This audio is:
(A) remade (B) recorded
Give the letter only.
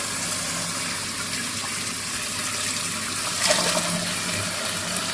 B